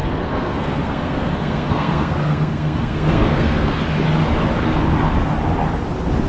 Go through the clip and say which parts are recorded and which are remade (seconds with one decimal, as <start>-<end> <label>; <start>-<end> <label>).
0.0-3.8 remade; 3.8-6.3 recorded